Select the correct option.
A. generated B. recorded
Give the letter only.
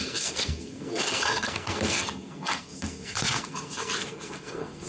A